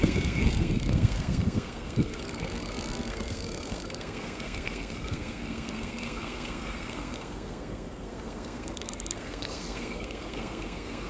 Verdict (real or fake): fake